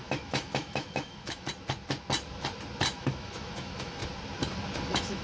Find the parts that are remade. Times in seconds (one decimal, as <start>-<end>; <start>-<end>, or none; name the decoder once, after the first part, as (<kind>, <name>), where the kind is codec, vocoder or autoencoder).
0.0-1.5 (autoencoder, DAC-VAE); 2.9-4.0; 4.8-5.2